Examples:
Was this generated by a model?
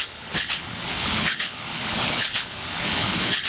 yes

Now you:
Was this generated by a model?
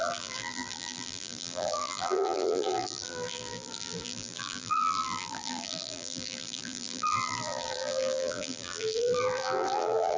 yes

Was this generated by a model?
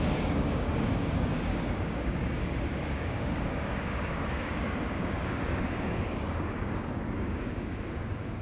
yes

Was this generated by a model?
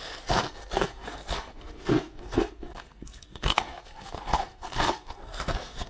yes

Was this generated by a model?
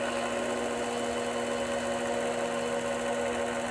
no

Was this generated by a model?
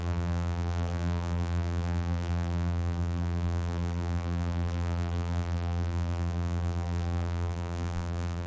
yes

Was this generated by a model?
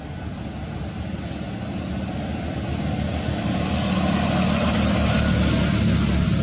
no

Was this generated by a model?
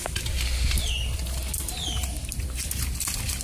no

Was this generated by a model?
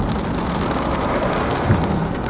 yes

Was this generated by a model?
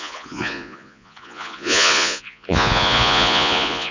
yes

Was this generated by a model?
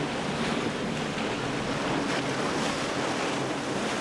no